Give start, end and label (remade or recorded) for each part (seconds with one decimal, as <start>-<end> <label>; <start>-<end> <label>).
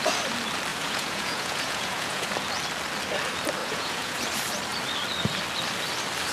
0.0-0.7 recorded; 0.7-2.3 remade; 2.3-3.6 recorded; 3.6-4.2 remade; 4.2-6.3 recorded